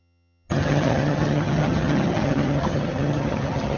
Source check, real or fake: fake